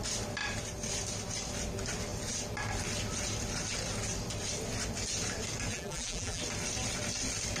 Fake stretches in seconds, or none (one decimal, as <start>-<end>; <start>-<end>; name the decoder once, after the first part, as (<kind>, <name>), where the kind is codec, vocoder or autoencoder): 5.7-6.4 (vocoder, BigVGAN v2)